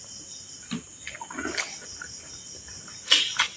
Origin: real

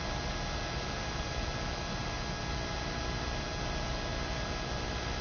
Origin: real